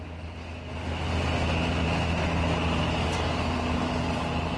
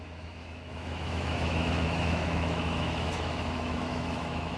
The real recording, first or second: first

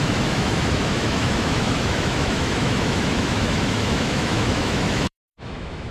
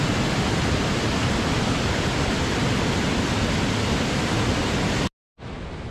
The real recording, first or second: second